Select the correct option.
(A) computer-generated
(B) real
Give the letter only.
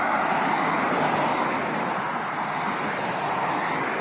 B